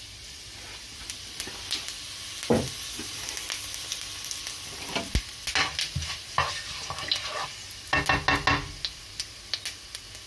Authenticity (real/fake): real